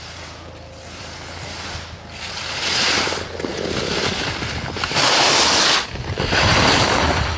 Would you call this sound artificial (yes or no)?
no